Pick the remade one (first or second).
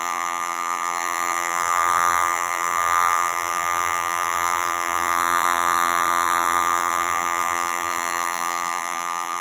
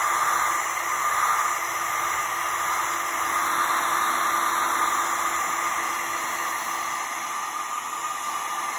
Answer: first